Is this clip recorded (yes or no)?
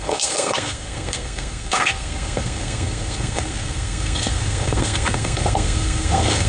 no